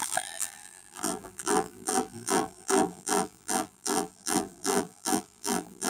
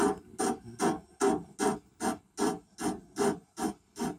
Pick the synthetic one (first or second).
first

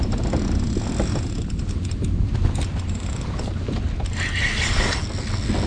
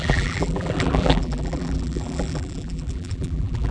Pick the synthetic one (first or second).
second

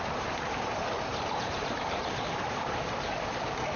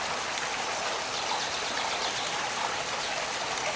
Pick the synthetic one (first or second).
first